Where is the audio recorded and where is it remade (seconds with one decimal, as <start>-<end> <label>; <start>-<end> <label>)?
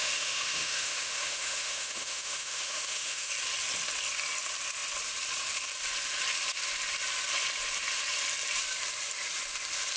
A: 0.0-3.3 remade; 3.3-10.0 recorded